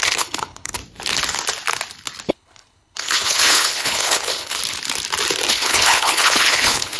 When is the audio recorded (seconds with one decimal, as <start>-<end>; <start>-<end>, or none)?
0.8-2.3; 4.6-5.5